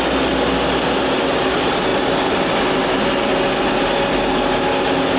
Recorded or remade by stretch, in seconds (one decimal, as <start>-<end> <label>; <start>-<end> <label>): 0.0-5.2 recorded